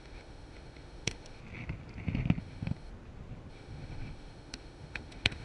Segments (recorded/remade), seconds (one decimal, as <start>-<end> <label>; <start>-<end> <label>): 0.0-1.4 remade; 1.4-2.4 recorded; 2.4-2.9 remade; 2.9-3.5 recorded; 3.5-5.4 remade